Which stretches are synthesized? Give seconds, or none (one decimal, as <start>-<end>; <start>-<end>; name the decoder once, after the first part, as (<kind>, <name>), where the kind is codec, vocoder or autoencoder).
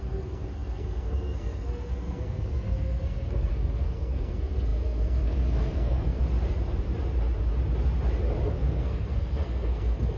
0.0-6.2 (codec, SNAC); 8.5-10.2